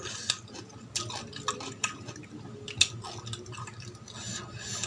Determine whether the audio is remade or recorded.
recorded